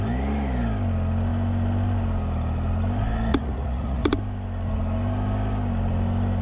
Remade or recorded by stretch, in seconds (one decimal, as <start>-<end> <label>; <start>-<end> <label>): 0.0-3.3 recorded; 3.3-4.1 remade; 4.1-6.4 recorded